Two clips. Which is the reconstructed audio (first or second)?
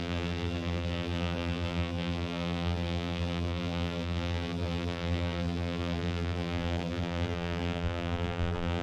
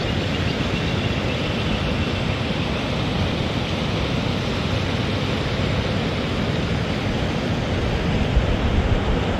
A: first